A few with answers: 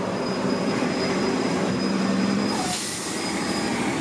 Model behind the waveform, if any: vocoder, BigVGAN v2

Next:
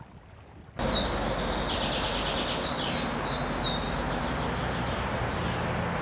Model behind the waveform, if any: none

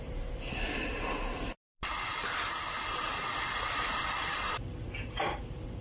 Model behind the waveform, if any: none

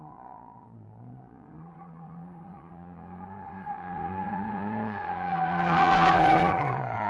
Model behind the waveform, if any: vocoder, Vocos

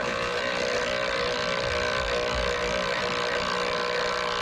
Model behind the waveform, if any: none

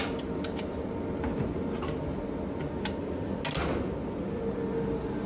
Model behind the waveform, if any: none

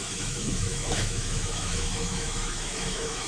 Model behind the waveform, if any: autoencoder, DAC-VAE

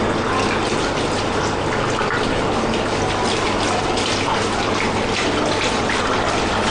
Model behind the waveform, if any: none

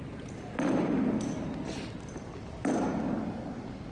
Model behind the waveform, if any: none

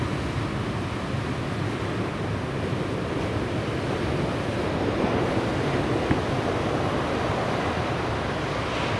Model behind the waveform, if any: none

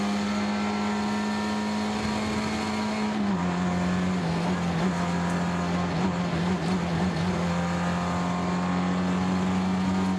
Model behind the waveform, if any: none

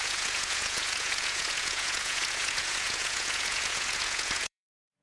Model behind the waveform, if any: vocoder, Vocos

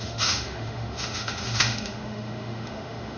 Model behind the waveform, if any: autoencoder, DAC-VAE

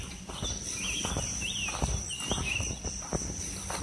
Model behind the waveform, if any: none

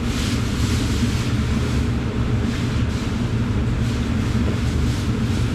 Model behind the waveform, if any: none